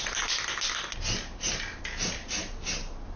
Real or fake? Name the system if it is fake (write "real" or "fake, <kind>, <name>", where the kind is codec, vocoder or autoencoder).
real